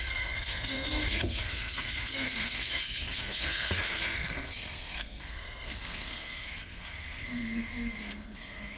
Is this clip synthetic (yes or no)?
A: yes